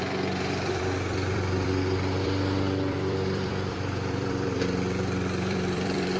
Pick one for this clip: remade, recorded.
remade